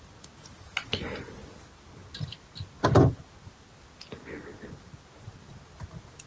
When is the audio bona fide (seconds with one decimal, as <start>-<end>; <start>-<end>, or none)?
0.0-6.3